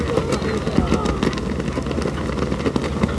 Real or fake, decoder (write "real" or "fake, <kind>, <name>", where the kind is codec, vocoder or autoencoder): real